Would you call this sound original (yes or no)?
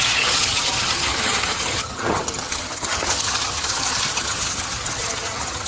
no